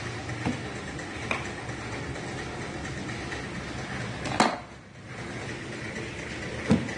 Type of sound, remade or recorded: recorded